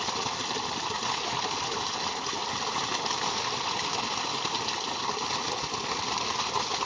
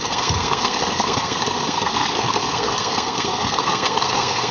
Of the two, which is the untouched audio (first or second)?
first